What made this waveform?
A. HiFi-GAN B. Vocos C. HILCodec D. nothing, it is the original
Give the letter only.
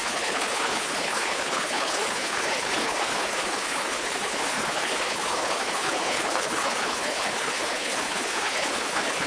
C